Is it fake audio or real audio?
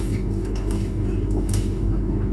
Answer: fake